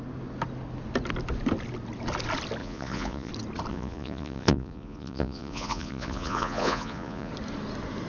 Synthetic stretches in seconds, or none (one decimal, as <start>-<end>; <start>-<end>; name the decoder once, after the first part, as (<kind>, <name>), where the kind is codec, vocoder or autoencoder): 2.6-3.3 (vocoder, Vocos); 3.7-7.3